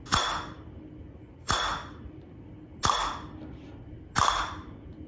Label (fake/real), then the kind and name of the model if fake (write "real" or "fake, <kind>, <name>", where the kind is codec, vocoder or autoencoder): real